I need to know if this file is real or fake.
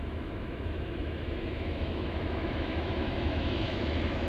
fake